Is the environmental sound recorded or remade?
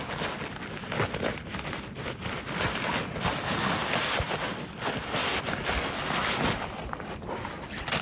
recorded